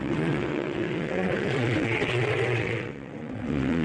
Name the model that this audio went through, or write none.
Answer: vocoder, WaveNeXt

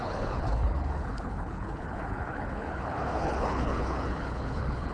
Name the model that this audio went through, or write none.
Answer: codec, HILCodec